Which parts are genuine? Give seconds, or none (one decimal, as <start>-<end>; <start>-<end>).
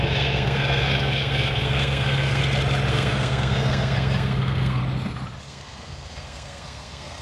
2.4-2.9; 4.8-5.4